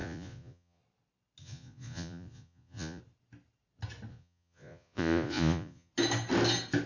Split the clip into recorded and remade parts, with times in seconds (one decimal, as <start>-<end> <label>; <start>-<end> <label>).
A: 0.0-0.8 remade; 0.8-1.4 recorded; 1.4-3.0 remade; 3.0-4.1 recorded; 4.1-5.9 remade; 5.9-6.9 recorded